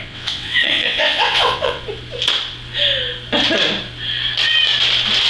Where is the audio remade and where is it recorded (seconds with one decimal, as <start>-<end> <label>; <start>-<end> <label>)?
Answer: 0.0-1.8 remade; 1.8-5.3 recorded